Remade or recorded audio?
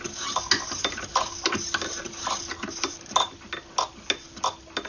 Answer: recorded